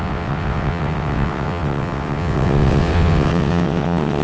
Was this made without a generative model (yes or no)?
no